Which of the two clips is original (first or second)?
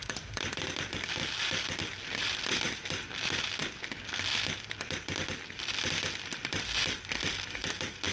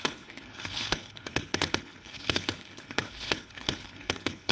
first